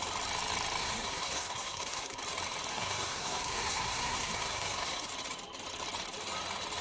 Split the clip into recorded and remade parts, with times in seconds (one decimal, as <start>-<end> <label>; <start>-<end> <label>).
0.0-0.8 recorded; 0.8-2.2 remade; 2.2-2.7 recorded; 2.7-5.1 remade; 5.1-6.8 recorded